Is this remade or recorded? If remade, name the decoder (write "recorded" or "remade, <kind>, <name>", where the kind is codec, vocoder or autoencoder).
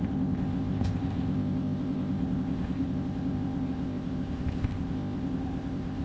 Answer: remade, codec, ZipCodec